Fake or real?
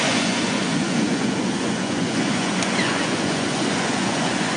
fake